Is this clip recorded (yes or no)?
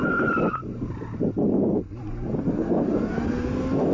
yes